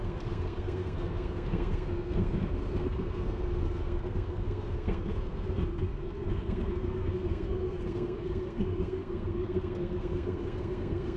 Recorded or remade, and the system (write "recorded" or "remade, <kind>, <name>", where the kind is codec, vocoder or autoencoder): remade, codec, SNAC